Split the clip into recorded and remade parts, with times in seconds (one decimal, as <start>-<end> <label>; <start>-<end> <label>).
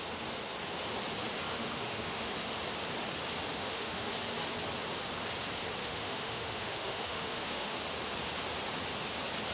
0.0-1.5 recorded; 1.5-2.3 remade; 2.3-3.5 recorded; 3.5-4.1 remade; 4.1-5.8 recorded; 5.8-7.8 remade; 7.8-9.5 recorded